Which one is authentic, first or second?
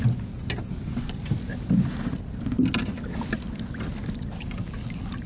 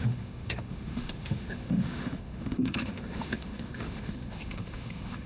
first